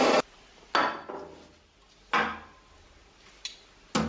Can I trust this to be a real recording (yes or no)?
yes